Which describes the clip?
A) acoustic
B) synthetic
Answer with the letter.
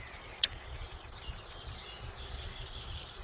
B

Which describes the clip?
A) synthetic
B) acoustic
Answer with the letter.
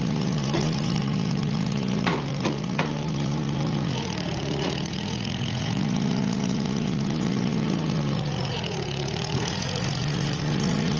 A